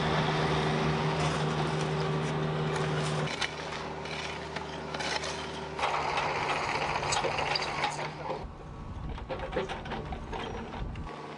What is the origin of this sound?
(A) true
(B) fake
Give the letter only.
A